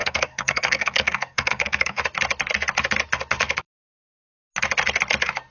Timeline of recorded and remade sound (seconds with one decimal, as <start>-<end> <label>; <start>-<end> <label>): 0.0-2.0 remade; 2.0-5.5 recorded